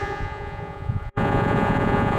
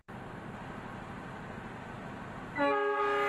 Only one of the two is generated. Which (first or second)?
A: first